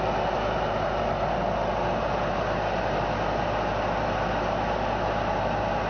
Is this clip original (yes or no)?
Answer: yes